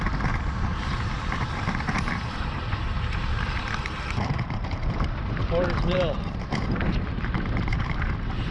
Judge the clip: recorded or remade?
remade